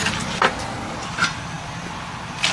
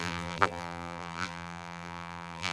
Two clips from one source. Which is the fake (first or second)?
second